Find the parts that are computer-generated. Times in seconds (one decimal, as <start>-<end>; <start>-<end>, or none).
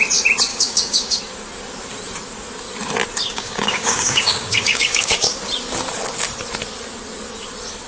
0.5-1.2; 3.2-5.4